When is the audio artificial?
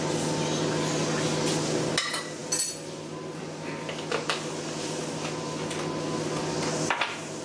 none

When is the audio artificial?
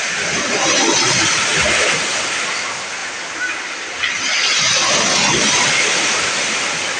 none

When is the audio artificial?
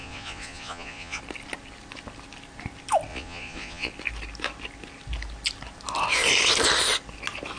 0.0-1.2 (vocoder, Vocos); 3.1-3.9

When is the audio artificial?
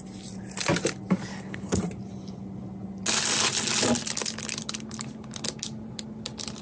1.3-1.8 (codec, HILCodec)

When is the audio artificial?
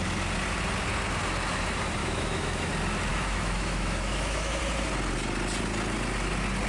2.0-2.7 (autoencoder, DAC-VAE); 3.1-4.6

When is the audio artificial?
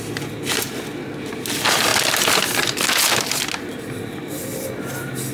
none